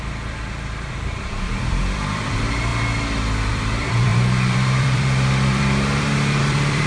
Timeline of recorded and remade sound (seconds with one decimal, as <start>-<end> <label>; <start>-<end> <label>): 0.0-2.7 remade; 2.7-3.5 recorded; 3.5-6.9 remade